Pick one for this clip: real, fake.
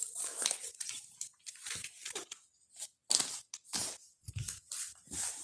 real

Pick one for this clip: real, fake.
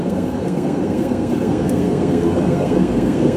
fake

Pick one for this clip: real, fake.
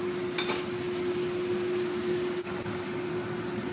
real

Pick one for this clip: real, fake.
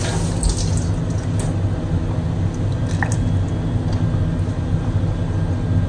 real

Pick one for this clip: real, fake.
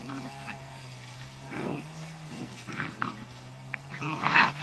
fake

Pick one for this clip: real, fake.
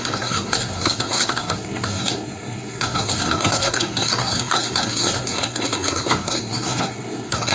fake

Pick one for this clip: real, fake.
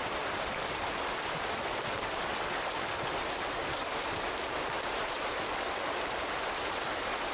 real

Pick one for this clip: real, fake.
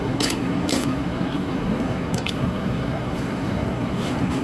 fake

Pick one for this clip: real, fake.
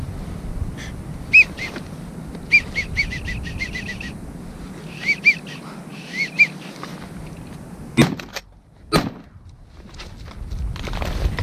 real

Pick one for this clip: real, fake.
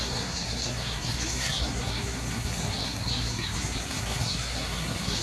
fake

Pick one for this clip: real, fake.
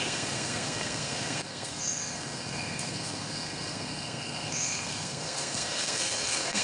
fake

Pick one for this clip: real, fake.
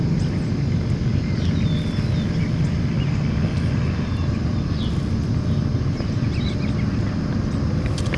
real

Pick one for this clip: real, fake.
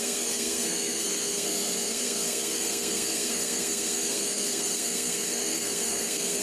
fake